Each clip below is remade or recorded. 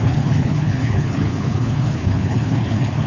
remade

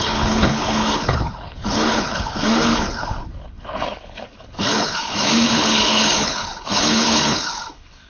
remade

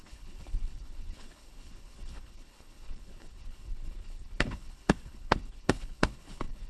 remade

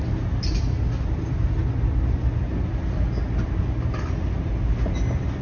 recorded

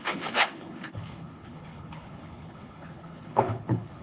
remade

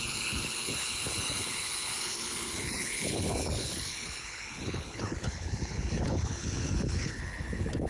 remade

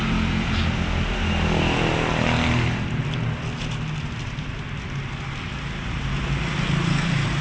recorded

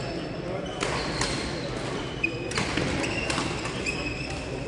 recorded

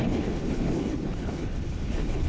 remade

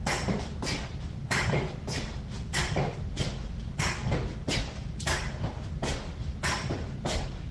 recorded